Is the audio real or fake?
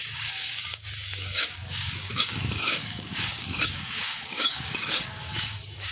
fake